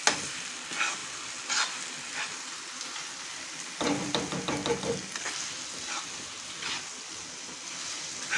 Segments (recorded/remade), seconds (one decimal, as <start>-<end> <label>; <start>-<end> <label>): 0.0-1.0 remade; 1.0-4.0 recorded; 4.0-4.6 remade; 4.6-8.0 recorded; 8.0-8.4 remade